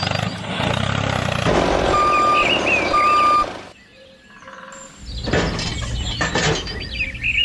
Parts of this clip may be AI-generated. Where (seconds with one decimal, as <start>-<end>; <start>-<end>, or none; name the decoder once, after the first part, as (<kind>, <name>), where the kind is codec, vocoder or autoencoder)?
none